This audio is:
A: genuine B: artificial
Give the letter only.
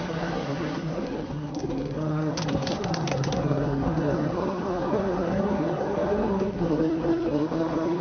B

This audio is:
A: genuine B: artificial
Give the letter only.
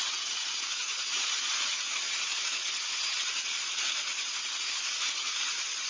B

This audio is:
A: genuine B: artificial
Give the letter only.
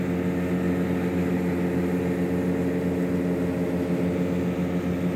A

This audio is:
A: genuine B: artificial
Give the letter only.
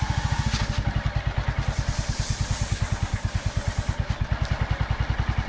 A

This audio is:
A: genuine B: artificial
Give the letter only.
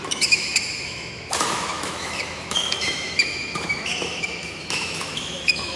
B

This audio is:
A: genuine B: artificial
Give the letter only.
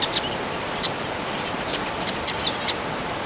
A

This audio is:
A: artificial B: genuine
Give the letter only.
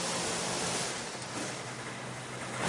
B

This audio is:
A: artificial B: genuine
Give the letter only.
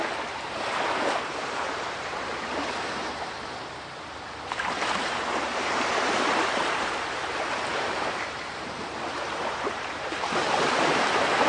A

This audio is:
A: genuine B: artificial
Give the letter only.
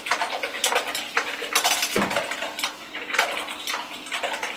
A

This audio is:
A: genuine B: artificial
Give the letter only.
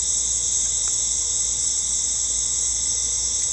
A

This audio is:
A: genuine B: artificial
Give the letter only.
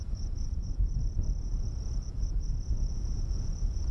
B